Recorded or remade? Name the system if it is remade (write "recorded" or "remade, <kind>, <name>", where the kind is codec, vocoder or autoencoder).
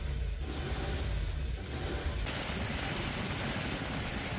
recorded